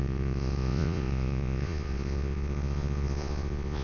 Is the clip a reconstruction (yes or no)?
yes